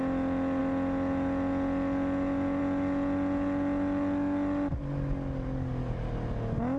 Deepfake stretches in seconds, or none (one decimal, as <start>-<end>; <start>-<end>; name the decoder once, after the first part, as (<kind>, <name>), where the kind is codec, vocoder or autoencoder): none